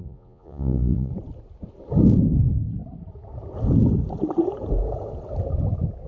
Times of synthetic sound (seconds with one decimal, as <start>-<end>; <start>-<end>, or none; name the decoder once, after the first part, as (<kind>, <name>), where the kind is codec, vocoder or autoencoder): 0.0-1.1 (vocoder, Vocos)